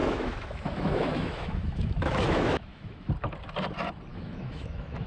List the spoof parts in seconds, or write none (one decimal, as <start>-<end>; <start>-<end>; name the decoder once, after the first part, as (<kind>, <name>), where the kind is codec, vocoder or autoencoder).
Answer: 0.0-3.1 (autoencoder, DAC-VAE); 4.1-5.1